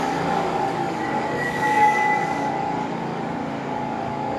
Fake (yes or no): yes